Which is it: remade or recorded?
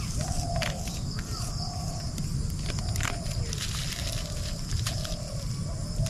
recorded